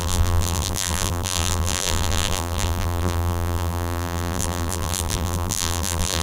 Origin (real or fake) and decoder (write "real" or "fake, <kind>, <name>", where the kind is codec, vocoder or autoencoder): fake, vocoder, BigVGAN v2